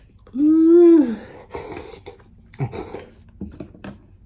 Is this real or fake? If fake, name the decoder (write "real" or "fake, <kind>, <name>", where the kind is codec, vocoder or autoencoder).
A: real